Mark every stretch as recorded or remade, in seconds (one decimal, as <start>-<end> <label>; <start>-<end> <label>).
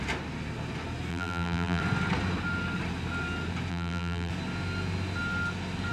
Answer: 0.0-1.1 recorded; 1.1-1.8 remade; 1.8-3.7 recorded; 3.7-4.3 remade; 4.3-5.9 recorded